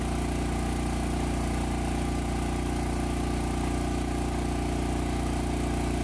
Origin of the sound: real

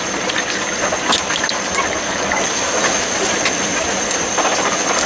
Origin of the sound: real